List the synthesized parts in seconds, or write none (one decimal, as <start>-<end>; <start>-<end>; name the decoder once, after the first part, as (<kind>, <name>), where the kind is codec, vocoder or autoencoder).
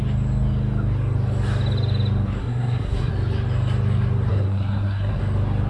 2.4-3.1 (codec, SNAC); 4.3-5.2